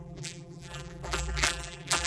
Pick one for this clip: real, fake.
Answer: fake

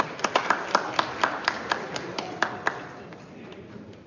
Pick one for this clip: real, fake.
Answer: real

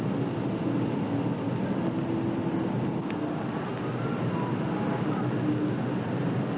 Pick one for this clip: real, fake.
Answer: real